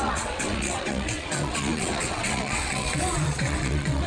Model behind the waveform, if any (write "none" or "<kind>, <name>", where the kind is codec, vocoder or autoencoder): vocoder, WaveNeXt